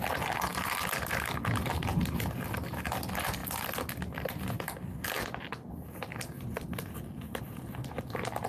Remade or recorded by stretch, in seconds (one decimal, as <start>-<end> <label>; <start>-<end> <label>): 0.0-8.5 recorded